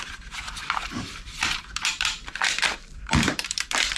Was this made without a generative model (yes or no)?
no